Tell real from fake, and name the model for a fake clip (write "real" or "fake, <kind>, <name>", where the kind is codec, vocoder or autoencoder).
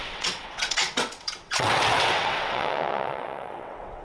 fake, vocoder, WaveNeXt